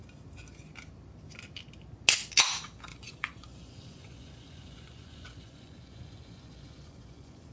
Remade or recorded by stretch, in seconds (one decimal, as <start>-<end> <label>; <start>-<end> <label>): 0.0-2.9 recorded; 2.9-7.5 remade